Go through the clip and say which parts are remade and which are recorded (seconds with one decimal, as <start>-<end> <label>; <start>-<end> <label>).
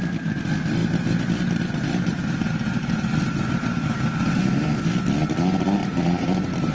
0.0-0.8 recorded; 0.8-4.8 remade; 4.8-5.8 recorded; 5.8-6.7 remade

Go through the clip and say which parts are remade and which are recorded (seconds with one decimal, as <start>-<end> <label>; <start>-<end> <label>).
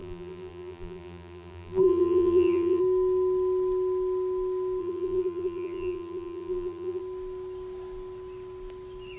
0.0-2.8 remade; 2.8-4.8 recorded; 4.8-7.0 remade; 7.0-9.2 recorded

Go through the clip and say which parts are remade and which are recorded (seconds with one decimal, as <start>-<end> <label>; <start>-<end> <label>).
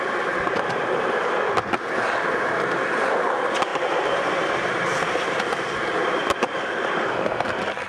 0.0-3.7 recorded; 3.7-4.6 remade; 4.6-7.9 recorded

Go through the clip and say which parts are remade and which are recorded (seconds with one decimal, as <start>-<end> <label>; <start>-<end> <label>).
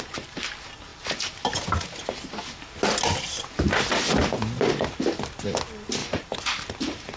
0.0-6.0 recorded; 6.0-7.2 remade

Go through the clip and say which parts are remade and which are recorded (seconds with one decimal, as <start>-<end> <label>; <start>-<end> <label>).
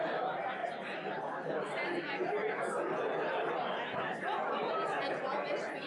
0.0-5.9 recorded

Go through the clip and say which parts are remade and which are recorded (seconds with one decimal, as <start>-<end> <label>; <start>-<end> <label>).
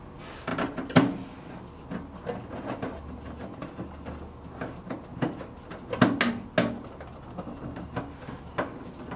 0.0-9.2 recorded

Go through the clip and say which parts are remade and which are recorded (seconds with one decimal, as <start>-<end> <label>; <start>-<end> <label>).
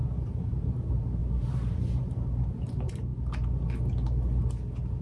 0.0-0.7 remade; 0.7-1.2 recorded; 1.2-2.3 remade; 2.3-5.0 recorded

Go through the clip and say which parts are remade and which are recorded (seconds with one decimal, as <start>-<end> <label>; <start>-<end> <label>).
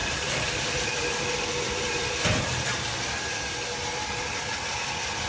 0.0-3.2 remade; 3.2-5.3 recorded